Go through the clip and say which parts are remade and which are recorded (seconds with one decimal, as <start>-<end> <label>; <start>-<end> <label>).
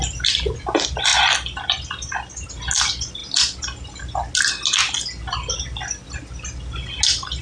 0.0-7.4 recorded